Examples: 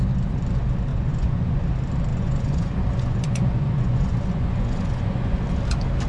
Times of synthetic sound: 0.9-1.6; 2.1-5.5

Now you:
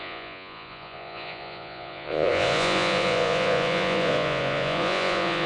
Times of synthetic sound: 0.0-5.5